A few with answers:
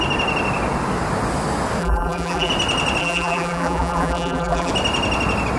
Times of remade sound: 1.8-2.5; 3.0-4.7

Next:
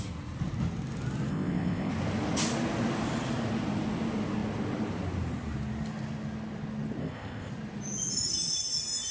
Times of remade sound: 1.3-1.9; 7.0-7.5

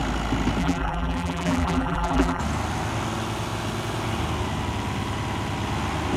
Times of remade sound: 0.6-2.4

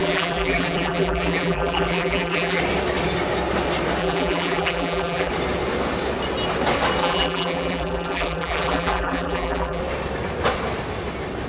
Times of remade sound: 0.0-2.6; 4.0-5.3; 7.0-9.8

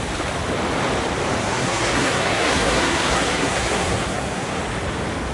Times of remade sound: 1.4-4.6